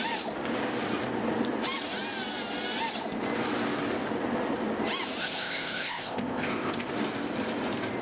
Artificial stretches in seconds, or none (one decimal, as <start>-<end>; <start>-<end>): 5.2-6.9